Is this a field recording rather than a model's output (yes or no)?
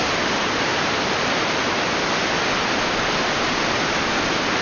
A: yes